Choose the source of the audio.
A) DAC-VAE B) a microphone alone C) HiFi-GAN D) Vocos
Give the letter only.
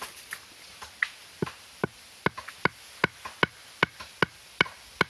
B